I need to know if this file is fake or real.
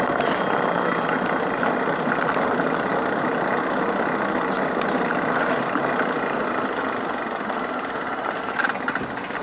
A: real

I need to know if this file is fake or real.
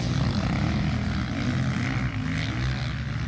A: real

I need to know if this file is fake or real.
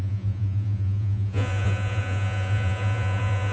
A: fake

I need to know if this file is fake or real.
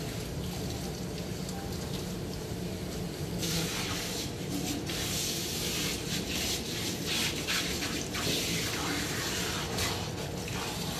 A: fake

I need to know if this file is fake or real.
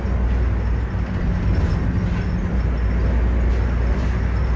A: real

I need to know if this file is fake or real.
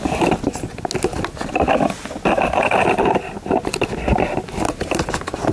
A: real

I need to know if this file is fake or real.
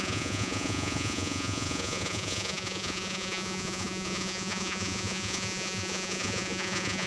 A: fake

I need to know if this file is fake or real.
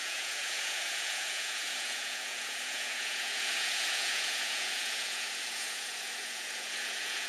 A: fake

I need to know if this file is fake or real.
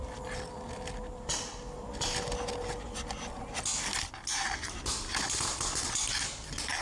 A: real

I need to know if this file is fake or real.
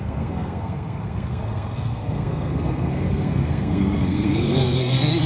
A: fake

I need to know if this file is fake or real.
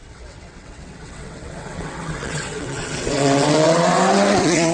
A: fake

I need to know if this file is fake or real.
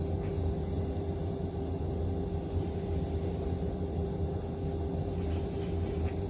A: real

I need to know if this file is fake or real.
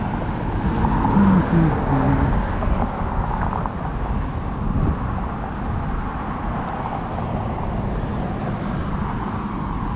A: real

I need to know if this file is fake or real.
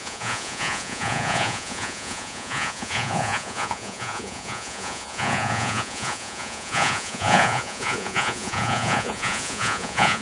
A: fake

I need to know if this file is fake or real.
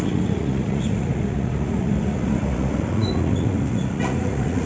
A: fake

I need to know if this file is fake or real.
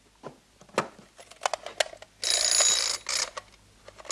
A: real